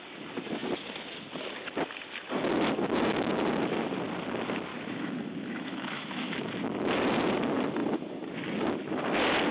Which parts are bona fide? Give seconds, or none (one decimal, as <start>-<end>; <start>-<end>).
0.0-4.7; 6.5-9.5